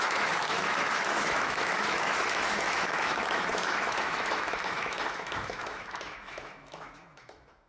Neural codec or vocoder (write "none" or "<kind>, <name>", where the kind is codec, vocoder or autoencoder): autoencoder, DAC-VAE